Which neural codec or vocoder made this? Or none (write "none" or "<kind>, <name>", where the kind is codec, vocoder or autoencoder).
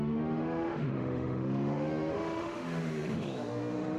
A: autoencoder, DAC-VAE